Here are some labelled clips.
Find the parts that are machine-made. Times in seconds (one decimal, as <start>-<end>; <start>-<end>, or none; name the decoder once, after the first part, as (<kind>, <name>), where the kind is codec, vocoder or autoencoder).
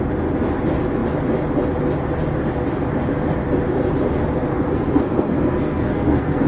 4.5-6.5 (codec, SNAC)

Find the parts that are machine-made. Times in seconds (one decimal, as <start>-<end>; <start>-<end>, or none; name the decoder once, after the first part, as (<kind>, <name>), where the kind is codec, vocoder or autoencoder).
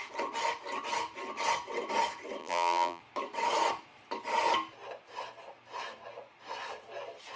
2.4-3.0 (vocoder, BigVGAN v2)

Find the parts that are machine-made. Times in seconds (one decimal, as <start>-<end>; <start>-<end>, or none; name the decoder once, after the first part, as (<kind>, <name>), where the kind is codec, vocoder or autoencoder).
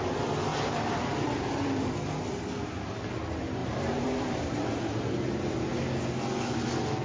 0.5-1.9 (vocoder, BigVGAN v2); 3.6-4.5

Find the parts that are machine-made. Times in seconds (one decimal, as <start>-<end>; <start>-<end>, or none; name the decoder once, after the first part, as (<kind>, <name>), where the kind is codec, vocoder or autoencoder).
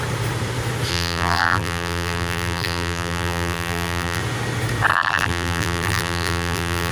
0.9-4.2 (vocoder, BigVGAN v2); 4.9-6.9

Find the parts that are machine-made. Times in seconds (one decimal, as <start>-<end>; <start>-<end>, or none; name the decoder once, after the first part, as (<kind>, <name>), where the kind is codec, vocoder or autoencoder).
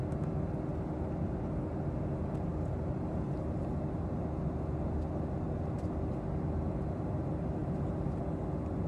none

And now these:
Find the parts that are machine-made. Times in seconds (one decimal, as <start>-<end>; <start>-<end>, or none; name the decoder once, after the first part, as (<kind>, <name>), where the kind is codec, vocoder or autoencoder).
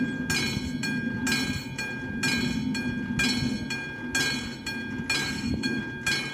5.2-5.8 (autoencoder, DAC-VAE)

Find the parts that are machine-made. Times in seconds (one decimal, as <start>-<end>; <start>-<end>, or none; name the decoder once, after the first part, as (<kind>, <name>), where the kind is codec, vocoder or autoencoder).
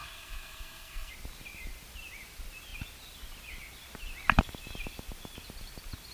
0.0-1.1 (codec, SNAC)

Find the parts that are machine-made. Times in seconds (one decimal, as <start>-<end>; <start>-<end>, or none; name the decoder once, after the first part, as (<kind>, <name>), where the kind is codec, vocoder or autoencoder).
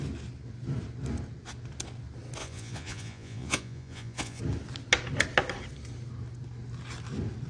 2.4-4.4 (vocoder, Vocos)